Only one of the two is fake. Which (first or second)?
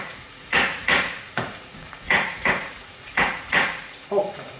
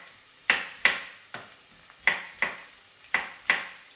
first